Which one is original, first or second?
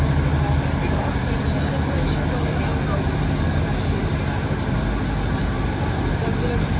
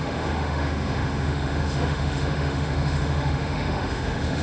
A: first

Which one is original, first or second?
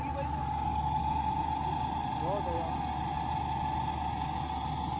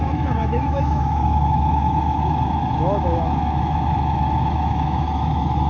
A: first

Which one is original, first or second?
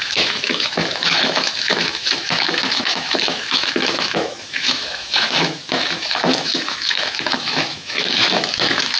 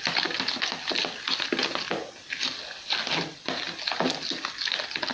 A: second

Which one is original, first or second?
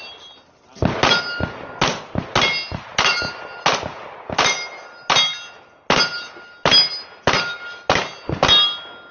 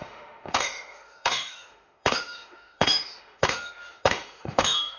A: first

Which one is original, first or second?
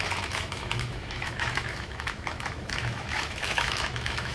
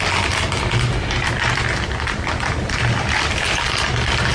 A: second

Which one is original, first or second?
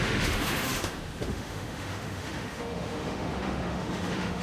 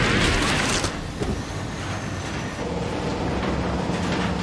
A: second